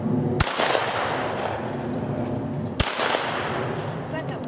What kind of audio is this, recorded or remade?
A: recorded